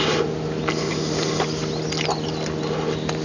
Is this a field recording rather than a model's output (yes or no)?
yes